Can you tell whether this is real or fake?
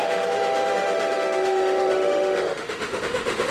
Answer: fake